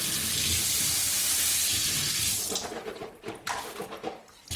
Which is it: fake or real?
real